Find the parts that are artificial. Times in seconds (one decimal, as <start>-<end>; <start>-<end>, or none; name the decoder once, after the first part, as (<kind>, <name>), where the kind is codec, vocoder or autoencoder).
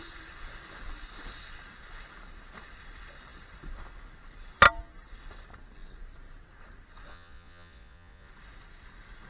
7.1-8.3 (vocoder, Vocos)